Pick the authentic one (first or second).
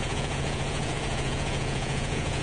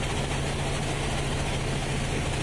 second